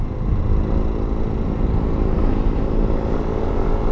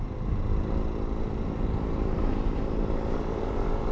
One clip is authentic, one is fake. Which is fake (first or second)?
second